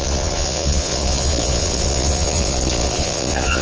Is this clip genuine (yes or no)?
no